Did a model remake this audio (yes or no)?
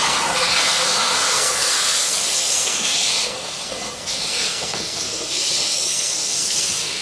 yes